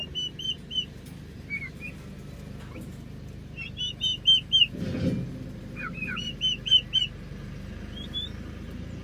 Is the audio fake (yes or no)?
no